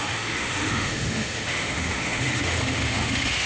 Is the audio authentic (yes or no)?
no